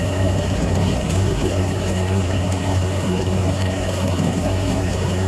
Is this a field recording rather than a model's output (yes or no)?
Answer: no